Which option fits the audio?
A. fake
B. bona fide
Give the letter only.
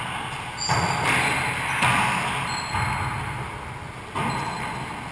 B